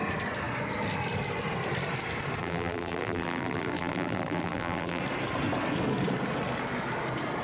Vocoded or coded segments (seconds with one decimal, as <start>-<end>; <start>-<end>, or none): 2.4-5.0